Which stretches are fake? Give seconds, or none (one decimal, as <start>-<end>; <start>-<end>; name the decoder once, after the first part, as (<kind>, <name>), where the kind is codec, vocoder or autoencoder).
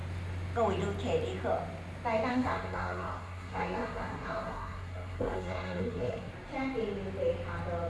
2.3-6.3 (codec, SNAC)